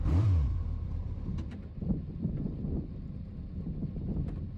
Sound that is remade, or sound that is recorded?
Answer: recorded